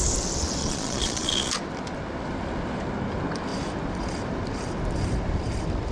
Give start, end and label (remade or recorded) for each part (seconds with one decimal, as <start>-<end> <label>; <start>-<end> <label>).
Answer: 0.0-0.6 recorded; 0.6-1.5 remade; 1.5-5.9 recorded